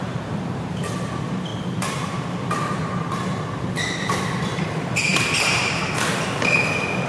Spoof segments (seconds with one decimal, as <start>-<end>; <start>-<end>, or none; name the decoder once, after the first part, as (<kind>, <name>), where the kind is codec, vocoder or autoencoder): 0.0-7.1 (vocoder, BigVGAN v2)